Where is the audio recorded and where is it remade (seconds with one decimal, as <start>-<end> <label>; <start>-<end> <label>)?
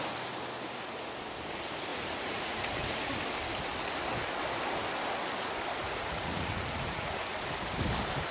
0.0-1.9 recorded; 1.9-3.1 remade; 3.1-5.8 recorded; 5.8-7.1 remade; 7.1-8.3 recorded